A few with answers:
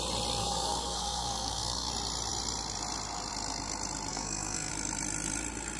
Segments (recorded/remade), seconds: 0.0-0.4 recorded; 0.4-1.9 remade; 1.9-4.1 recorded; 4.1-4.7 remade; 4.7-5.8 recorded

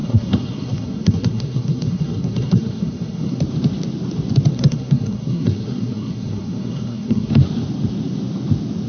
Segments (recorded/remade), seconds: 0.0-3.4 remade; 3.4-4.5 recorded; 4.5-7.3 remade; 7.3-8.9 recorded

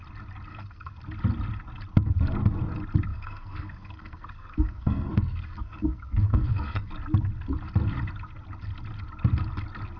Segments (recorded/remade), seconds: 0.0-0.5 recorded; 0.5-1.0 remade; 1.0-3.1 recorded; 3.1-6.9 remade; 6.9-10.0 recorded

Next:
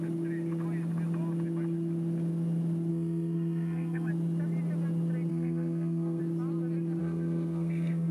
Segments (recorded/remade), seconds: 0.0-2.9 recorded; 2.9-4.1 remade; 4.1-5.3 recorded; 5.3-6.2 remade; 6.2-7.0 recorded; 7.0-8.1 remade

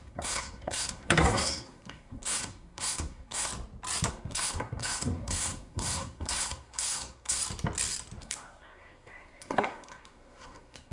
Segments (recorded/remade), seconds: 0.0-3.5 remade; 3.5-4.1 recorded; 4.1-7.4 remade; 7.4-8.2 recorded; 8.2-10.9 remade

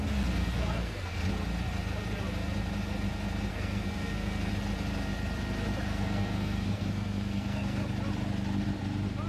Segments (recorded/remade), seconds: 0.0-0.6 recorded; 0.6-1.2 remade; 1.2-3.5 recorded; 3.5-4.5 remade; 4.5-5.9 recorded; 5.9-7.8 remade; 7.8-9.3 recorded

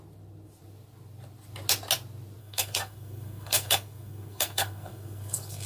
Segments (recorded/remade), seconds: 0.0-2.4 recorded; 2.4-5.7 remade